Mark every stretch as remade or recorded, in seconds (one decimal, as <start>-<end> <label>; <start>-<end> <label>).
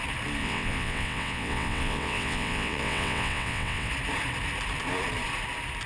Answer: 0.0-0.4 recorded; 0.4-3.9 remade; 3.9-5.9 recorded